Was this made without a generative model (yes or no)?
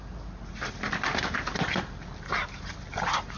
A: yes